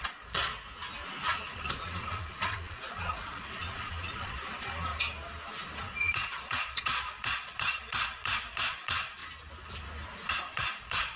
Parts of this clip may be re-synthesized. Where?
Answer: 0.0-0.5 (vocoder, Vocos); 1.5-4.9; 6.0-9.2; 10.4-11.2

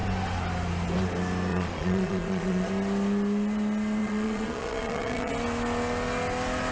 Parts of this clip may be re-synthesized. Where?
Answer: 1.5-2.7 (vocoder, Vocos); 4.0-5.3

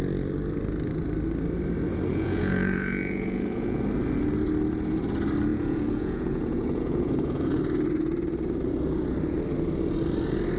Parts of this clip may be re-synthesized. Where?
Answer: 2.1-3.8 (vocoder, Vocos); 5.5-7.6